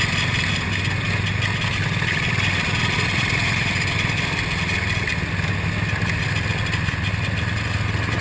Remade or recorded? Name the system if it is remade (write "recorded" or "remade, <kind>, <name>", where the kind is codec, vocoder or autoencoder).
recorded